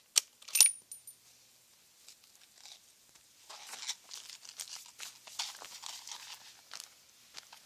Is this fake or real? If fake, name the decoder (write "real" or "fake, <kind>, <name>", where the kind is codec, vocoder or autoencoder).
real